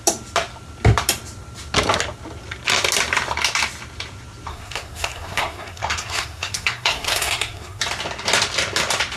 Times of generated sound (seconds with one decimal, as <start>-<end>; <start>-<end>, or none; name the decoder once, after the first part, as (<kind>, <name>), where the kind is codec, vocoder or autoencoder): 4.5-7.8 (codec, SNAC)